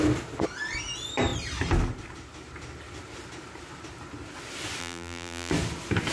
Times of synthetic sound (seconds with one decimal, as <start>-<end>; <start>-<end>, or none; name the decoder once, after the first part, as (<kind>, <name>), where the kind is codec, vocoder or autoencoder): 4.8-5.5 (vocoder, BigVGAN v2)